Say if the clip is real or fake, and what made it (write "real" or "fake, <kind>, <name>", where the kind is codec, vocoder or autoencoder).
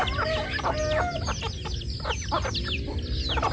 real